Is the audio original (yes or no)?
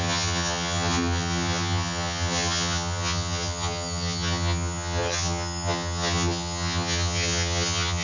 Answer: no